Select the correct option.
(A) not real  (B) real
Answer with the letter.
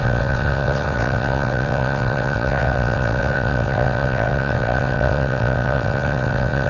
A